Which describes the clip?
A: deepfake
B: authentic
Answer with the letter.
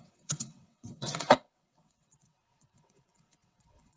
A